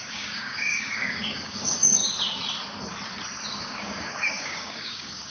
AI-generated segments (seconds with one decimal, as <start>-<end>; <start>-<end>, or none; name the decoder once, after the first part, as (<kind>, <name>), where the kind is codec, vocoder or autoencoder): 0.0-2.0 (codec, DAC); 3.6-5.3